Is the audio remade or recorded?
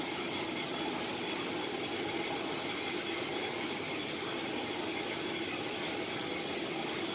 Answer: recorded